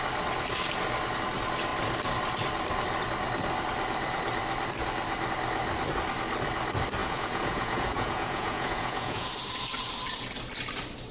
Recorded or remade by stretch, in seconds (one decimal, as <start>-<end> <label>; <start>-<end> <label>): 0.0-7.0 recorded; 7.0-9.3 remade; 9.3-11.1 recorded